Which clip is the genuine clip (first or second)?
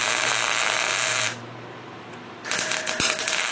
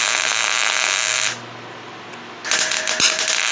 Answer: second